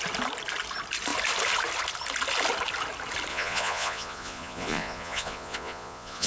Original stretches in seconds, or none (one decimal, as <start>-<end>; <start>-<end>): 0.0-3.3